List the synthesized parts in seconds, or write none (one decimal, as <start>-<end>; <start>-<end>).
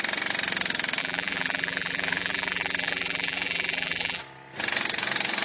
1.0-4.2